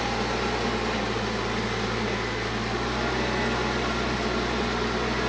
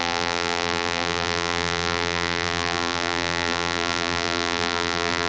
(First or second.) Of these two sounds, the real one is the first